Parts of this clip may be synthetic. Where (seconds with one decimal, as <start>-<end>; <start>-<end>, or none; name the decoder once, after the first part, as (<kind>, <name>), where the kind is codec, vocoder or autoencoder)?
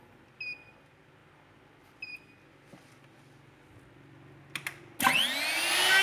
none